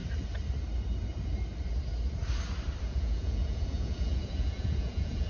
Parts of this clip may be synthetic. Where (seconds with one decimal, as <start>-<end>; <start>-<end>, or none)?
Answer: 2.8-5.3